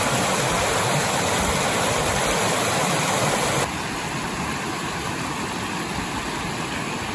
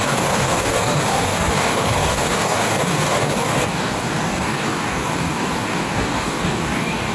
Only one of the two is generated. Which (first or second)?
second